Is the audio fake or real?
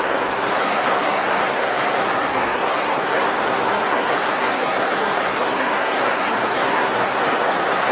fake